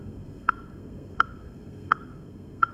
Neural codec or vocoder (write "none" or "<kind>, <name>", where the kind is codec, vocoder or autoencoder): codec, SNAC